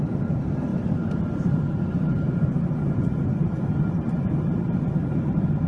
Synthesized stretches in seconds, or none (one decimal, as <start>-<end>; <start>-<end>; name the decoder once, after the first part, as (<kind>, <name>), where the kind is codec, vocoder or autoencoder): 0.0-5.7 (vocoder, BigVGAN v2)